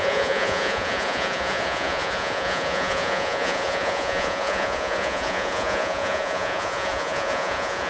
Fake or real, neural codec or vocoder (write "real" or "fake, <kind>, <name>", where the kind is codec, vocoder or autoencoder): fake, vocoder, Vocos